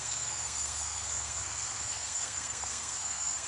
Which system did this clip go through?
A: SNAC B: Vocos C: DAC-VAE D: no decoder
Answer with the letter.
A